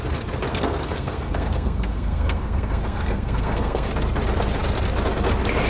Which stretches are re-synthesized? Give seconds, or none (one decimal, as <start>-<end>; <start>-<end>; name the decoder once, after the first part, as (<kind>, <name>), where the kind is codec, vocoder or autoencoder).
0.5-3.9 (codec, SNAC)